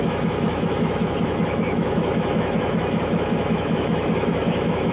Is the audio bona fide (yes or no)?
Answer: no